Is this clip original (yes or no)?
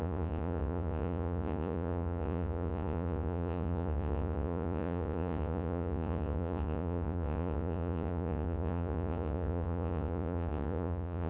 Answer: no